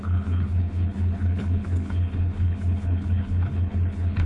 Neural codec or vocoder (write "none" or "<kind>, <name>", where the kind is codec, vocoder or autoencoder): codec, HILCodec